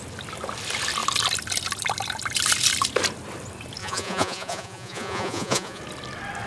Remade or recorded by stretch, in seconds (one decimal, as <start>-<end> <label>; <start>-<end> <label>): 0.0-3.8 recorded; 3.8-5.8 remade; 5.8-6.5 recorded